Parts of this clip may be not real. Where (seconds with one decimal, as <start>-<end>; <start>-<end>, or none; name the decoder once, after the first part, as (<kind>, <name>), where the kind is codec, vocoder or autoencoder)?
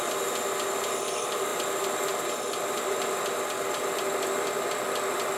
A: none